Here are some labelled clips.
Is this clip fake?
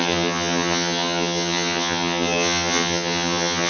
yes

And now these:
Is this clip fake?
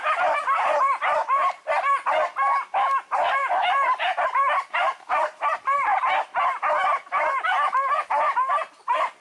no